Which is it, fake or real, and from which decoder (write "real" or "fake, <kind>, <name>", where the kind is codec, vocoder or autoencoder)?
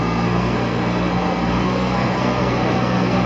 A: fake, codec, SNAC